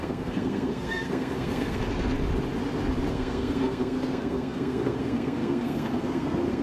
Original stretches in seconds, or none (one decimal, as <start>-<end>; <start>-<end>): 1.8-3.1